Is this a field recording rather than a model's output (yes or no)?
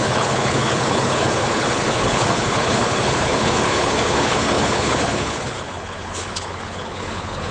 no